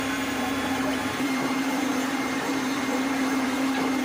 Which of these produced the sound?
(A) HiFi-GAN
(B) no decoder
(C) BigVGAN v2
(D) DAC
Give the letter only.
C